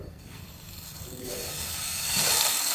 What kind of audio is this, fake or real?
fake